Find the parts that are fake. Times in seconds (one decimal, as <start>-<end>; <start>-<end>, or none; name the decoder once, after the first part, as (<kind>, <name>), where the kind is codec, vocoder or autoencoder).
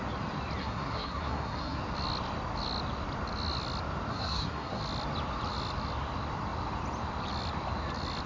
0.6-1.8 (codec, SNAC); 4.1-4.8